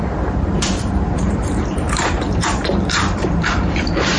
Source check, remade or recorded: remade